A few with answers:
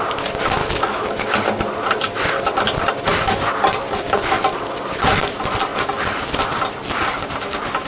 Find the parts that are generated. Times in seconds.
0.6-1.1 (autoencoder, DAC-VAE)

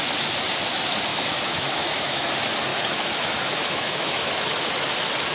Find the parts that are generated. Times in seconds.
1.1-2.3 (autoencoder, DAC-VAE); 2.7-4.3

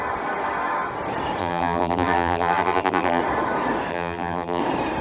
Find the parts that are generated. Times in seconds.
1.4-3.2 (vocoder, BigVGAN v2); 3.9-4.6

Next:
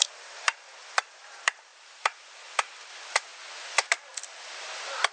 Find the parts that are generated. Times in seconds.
0.0-3.3 (vocoder, BigVGAN v2)